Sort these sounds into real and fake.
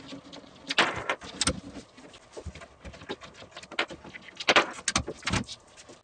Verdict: real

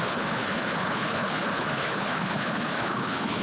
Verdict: fake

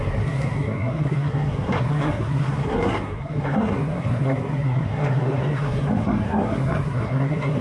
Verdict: fake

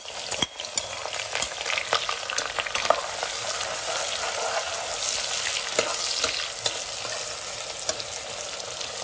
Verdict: real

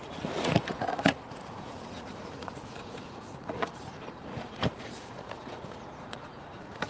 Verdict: fake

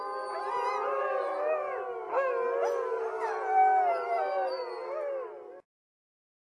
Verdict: real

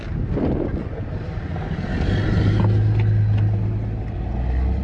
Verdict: real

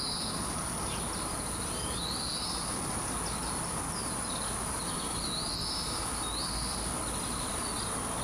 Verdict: real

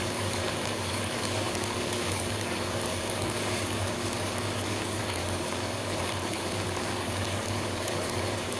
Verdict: fake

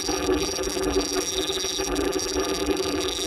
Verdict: fake